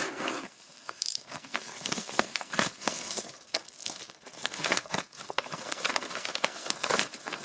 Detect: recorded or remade remade